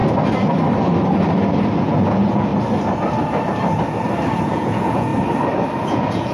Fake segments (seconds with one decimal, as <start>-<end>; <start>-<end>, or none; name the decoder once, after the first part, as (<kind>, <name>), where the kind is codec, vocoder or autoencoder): 1.8-2.5 (vocoder, Vocos); 4.5-5.1; 5.8-6.3